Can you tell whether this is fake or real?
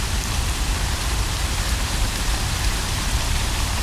fake